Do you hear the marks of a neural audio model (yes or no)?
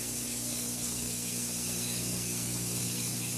yes